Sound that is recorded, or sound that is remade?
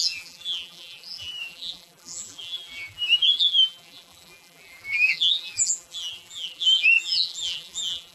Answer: remade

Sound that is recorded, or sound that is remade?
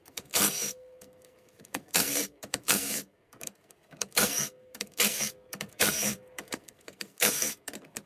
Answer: remade